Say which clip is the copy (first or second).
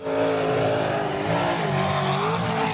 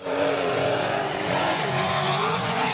second